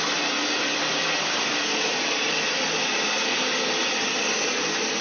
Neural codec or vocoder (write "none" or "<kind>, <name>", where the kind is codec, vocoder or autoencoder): none